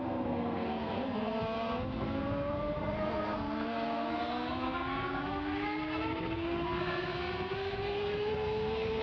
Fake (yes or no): yes